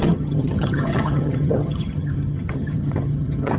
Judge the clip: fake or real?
fake